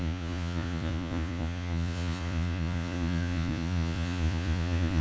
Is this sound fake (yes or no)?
yes